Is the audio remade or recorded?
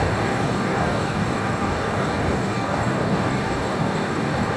remade